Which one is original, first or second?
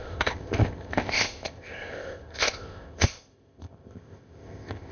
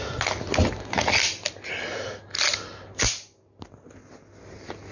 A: second